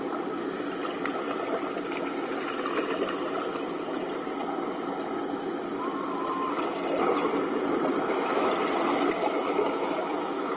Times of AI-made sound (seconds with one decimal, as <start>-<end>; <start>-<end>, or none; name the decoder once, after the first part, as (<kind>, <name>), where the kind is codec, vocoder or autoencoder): 7.9-8.5 (autoencoder, DAC-VAE); 9.2-10.6

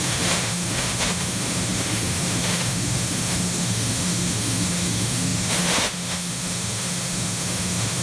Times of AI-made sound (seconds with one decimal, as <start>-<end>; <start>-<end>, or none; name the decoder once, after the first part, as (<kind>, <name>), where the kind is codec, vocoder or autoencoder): 0.0-8.0 (autoencoder, DAC-VAE)

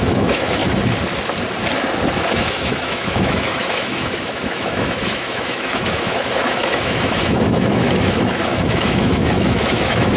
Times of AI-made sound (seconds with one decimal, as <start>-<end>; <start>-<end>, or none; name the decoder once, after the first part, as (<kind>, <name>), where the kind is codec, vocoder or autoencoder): 0.0-0.6 (autoencoder, DAC-VAE); 2.3-10.2